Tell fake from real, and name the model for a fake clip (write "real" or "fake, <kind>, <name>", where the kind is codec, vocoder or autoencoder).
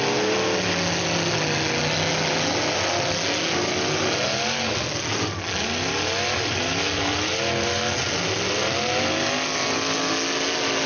real